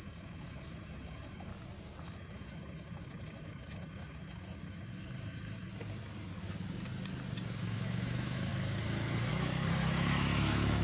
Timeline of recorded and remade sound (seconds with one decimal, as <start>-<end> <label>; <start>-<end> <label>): 0.0-1.5 remade; 1.5-2.0 recorded; 2.0-5.7 remade; 5.7-7.6 recorded; 7.6-8.5 remade; 8.5-9.3 recorded; 9.3-10.8 remade